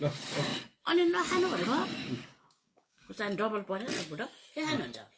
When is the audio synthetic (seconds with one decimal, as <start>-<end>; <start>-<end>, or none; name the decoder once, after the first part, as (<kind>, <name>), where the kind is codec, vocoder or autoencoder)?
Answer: 2.0-3.1 (codec, DAC)